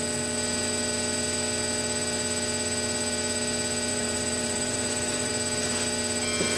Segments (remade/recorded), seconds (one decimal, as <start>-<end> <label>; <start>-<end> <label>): 0.0-3.9 recorded; 3.9-5.3 remade; 5.3-6.6 recorded